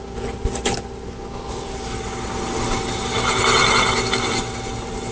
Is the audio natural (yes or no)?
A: yes